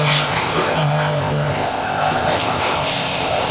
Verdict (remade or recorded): remade